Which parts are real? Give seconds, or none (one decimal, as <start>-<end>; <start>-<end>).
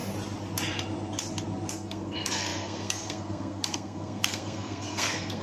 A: 0.0-1.7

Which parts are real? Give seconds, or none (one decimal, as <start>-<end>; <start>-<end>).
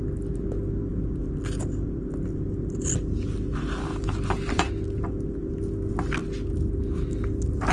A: 0.0-0.9; 2.0-3.9; 4.7-7.7